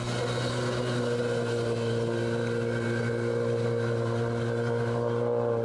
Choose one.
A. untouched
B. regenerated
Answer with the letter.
A